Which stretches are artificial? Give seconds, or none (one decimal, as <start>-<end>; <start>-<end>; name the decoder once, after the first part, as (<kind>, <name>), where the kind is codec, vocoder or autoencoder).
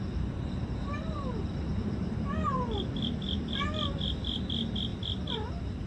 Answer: 0.0-4.9 (vocoder, BigVGAN v2); 5.5-5.9